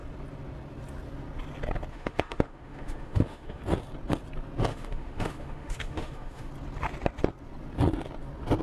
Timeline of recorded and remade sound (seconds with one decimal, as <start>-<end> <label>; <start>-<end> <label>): 0.0-1.9 recorded; 1.9-3.6 remade; 3.6-4.7 recorded; 4.7-6.5 remade; 6.5-8.6 recorded